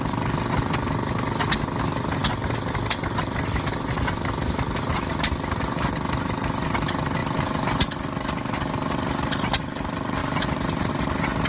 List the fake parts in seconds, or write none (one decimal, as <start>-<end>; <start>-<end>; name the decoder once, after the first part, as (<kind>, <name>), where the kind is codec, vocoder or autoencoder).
7.2-7.8 (vocoder, BigVGAN v2); 10.2-10.9